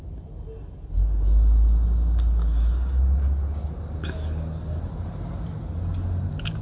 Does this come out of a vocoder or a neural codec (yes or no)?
no